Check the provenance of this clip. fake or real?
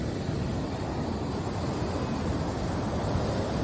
real